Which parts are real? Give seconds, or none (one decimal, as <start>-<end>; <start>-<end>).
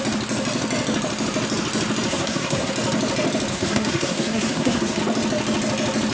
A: 0.0-2.1; 2.7-3.5; 5.0-6.1